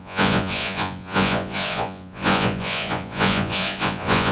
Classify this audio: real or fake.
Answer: fake